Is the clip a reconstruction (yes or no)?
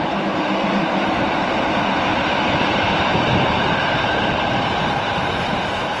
yes